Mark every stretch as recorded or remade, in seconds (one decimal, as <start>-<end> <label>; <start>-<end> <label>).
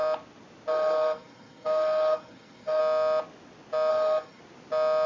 0.0-0.7 recorded; 0.7-2.8 remade; 2.8-3.9 recorded; 3.9-4.4 remade; 4.4-5.1 recorded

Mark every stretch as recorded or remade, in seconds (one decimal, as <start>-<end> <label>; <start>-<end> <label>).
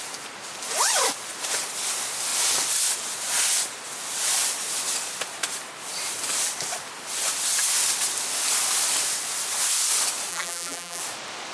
0.0-10.3 recorded; 10.3-11.0 remade; 11.0-11.5 recorded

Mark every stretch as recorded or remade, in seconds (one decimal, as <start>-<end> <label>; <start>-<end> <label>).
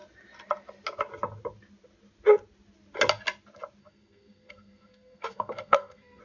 0.0-3.8 recorded; 3.8-6.2 remade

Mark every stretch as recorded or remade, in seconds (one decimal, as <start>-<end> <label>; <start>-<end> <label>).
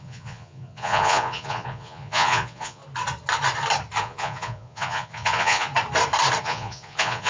0.0-2.8 remade; 2.8-4.0 recorded; 4.0-5.7 remade; 5.7-6.4 recorded; 6.4-7.3 remade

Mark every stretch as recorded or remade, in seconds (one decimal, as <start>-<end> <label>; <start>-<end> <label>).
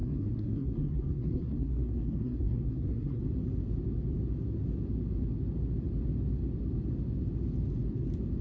0.0-3.2 remade; 3.2-8.4 recorded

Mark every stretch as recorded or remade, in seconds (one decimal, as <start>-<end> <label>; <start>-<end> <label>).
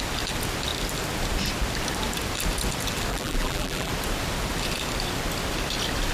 0.0-3.1 recorded; 3.1-3.9 remade; 3.9-6.1 recorded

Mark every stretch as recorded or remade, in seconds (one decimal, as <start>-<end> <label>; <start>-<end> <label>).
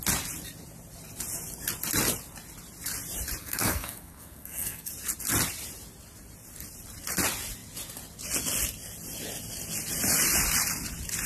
0.0-3.4 recorded; 3.4-4.9 remade; 4.9-11.3 recorded